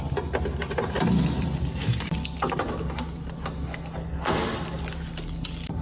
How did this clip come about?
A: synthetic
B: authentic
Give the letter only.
B